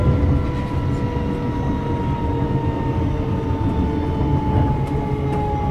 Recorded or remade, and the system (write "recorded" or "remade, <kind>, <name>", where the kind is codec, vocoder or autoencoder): recorded